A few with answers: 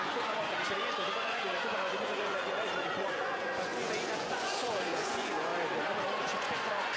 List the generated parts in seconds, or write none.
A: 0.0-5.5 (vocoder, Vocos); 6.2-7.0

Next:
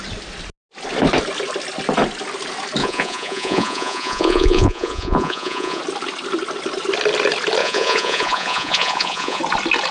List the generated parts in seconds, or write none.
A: 2.8-5.8 (vocoder, Vocos); 7.6-9.4

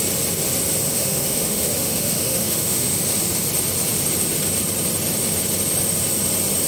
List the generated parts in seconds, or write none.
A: 0.9-3.0 (autoencoder, DAC-VAE)

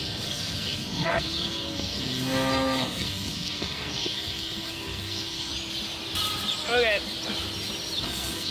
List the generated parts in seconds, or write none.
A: 0.0-5.5 (codec, SNAC); 8.0-8.5

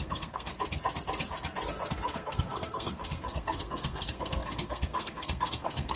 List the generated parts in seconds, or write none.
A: 0.0-0.5 (codec, SNAC); 1.9-6.0